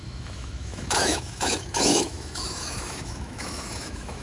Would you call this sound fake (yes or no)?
yes